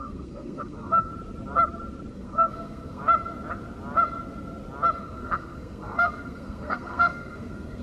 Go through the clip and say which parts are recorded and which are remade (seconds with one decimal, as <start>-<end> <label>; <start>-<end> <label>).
0.0-1.1 remade; 1.1-2.1 recorded; 2.1-3.0 remade; 3.0-5.0 recorded; 5.0-7.8 remade